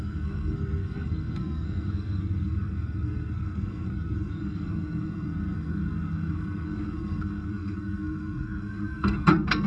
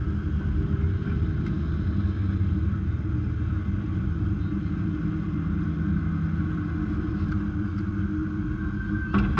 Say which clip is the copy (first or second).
first